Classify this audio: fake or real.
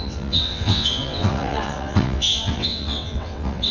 fake